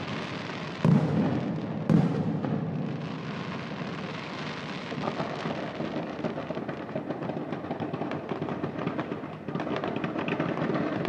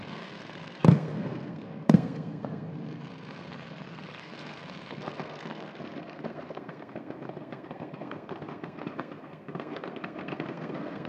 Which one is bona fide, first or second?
first